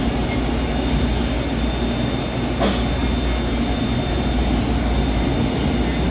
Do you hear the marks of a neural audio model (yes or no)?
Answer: no